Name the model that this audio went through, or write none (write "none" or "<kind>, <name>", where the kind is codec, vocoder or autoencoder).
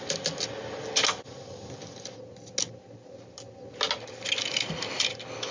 none